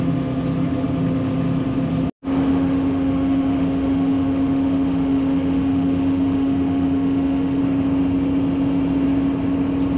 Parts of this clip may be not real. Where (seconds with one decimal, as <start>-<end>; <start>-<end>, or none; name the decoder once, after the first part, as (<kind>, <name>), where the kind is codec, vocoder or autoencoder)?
2.5-7.6 (autoencoder, DAC-VAE)